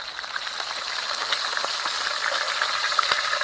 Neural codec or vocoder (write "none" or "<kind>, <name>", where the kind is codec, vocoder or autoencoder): vocoder, BigVGAN v2